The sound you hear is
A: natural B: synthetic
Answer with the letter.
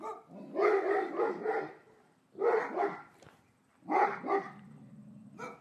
B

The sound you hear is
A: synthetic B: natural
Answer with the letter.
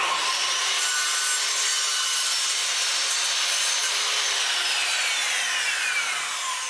B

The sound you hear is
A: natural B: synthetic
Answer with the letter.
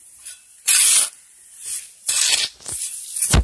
A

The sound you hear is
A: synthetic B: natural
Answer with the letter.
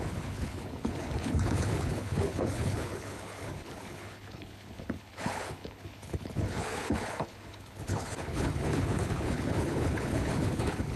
A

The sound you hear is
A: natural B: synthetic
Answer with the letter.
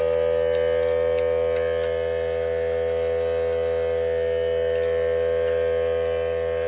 A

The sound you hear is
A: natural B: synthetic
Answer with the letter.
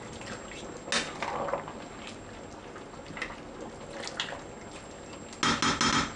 A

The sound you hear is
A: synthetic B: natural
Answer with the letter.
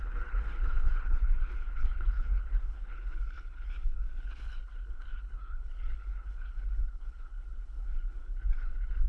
A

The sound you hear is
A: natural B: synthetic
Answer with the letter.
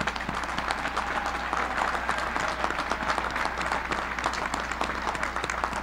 A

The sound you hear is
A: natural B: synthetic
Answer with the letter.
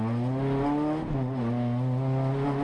A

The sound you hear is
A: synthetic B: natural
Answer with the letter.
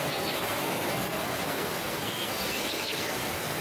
A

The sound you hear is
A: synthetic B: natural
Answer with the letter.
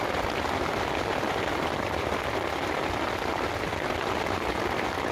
B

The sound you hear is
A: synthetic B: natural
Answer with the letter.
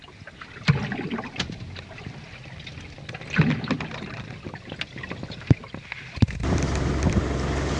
B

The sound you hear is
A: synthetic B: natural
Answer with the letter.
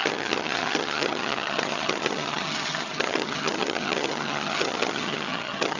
A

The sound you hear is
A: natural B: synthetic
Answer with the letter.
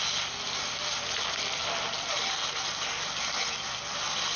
A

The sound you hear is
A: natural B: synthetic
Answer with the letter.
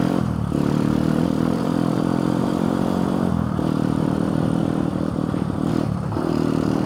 B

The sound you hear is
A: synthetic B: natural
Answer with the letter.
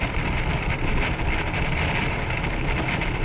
A